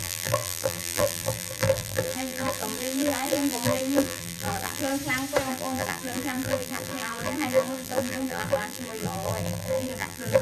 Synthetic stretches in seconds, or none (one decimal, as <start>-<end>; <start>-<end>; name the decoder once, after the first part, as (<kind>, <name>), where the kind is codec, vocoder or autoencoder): 0.0-4.9 (vocoder, BigVGAN v2); 5.5-10.4